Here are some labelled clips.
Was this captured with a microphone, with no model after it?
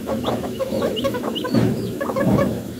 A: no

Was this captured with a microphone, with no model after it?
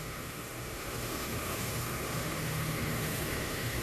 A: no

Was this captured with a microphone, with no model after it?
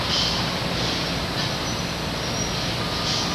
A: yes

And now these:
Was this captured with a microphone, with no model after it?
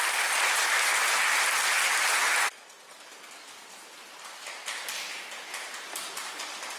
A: yes